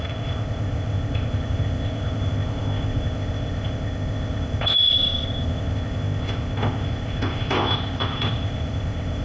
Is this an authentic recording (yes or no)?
no